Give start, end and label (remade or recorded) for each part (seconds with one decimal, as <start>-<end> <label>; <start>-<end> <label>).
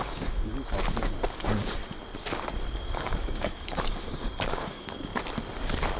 0.0-0.5 remade; 0.5-1.3 recorded; 1.3-1.8 remade; 1.8-2.7 recorded; 2.7-5.1 remade; 5.1-6.0 recorded